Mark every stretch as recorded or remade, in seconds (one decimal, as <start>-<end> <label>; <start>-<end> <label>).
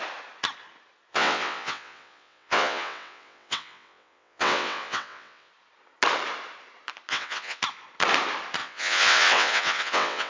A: 0.0-1.1 recorded; 1.1-5.5 remade; 5.5-7.1 recorded; 7.1-7.6 remade; 7.6-8.6 recorded; 8.6-10.3 remade